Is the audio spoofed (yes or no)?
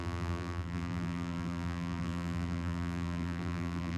yes